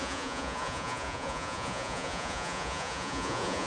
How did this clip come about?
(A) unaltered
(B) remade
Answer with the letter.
B